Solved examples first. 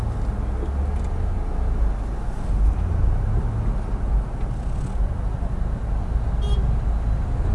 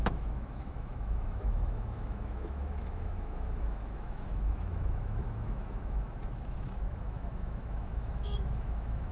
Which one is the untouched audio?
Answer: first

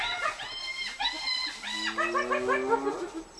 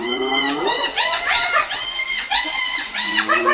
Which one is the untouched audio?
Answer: first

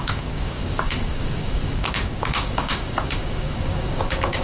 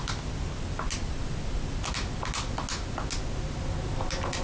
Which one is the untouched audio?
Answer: second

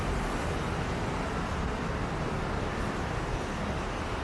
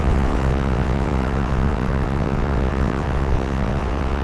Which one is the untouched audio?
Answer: first